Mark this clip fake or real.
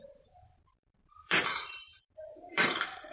fake